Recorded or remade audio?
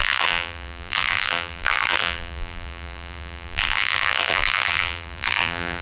remade